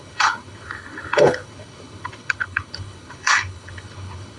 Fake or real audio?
fake